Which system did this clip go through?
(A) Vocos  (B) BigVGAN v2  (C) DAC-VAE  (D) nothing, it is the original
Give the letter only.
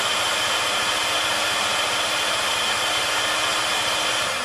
D